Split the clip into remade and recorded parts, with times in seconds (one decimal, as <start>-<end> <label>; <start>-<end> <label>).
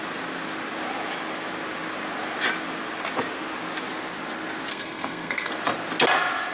0.0-4.7 recorded; 4.7-5.5 remade; 5.5-6.5 recorded